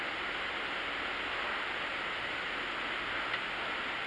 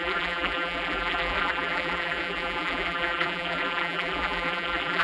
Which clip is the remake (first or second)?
second